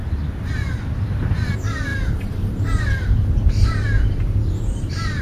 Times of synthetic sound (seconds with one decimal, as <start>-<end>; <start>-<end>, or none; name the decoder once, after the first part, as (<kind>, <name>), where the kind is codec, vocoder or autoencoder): 1.9-5.2 (vocoder, BigVGAN v2)